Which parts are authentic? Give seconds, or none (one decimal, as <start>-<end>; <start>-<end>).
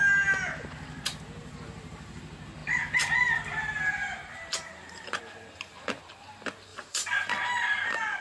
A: 0.0-1.4; 2.2-4.0; 5.2-6.7; 7.3-8.2